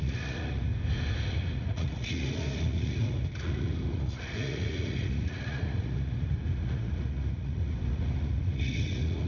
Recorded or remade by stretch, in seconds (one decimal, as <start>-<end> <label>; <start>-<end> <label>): 0.0-0.7 remade; 0.7-1.3 recorded; 1.3-9.3 remade

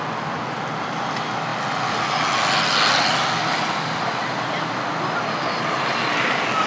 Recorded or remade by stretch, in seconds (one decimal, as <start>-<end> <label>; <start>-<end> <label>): 0.0-6.7 recorded